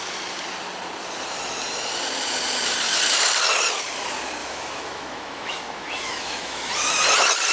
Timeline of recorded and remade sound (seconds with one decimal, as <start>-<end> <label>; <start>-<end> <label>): 0.0-4.4 recorded; 4.4-6.7 remade; 6.7-7.5 recorded